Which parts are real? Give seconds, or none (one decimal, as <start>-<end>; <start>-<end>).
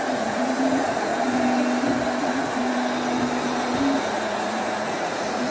1.1-2.2; 2.6-4.1